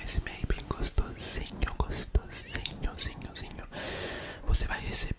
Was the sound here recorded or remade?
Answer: remade